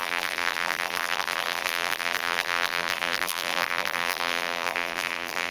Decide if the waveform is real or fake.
fake